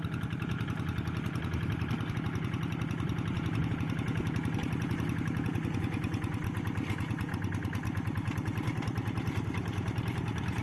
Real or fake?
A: real